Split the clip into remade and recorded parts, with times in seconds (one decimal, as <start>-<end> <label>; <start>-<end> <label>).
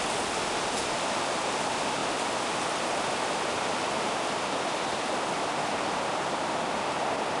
0.0-7.4 recorded